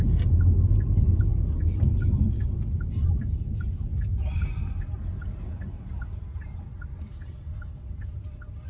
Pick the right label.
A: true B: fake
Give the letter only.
A